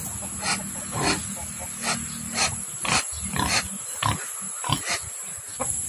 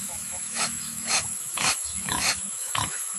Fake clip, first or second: second